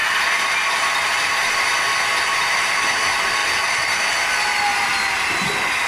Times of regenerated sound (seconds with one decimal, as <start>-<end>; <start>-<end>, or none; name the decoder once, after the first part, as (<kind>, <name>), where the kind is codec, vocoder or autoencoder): 3.4-4.1 (vocoder, BigVGAN v2); 4.7-5.5

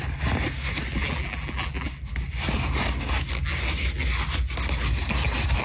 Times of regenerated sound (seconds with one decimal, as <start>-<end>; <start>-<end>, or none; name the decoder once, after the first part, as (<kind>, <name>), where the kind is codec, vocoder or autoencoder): 1.0-1.9 (vocoder, BigVGAN v2)

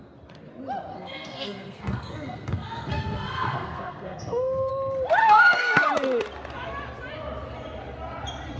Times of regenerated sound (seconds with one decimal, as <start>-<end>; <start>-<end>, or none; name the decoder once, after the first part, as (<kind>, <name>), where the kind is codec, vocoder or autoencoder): 0.9-4.7 (codec, SNAC); 5.2-5.9